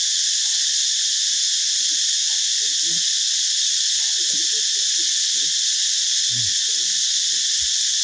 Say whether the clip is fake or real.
real